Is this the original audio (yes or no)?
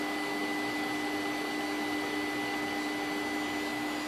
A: yes